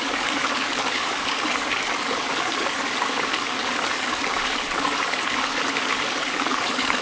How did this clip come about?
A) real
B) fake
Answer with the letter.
B